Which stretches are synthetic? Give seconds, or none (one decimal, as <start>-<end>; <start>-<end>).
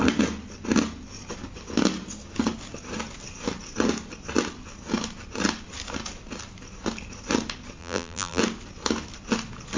7.8-8.4